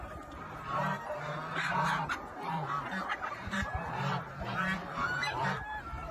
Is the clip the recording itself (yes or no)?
no